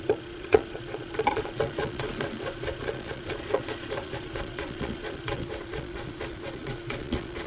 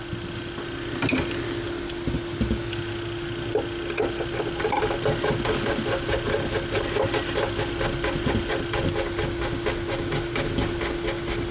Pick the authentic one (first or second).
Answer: second